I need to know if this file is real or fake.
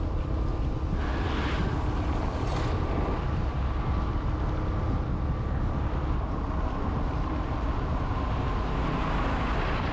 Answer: real